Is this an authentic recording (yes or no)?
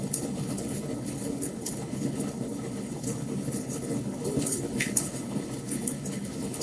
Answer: no